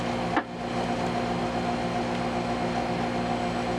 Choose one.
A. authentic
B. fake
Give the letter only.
A